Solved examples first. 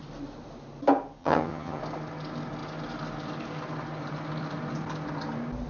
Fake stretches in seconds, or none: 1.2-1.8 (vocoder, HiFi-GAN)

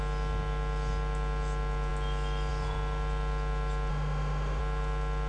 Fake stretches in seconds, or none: 3.9-4.6 (autoencoder, DAC-VAE)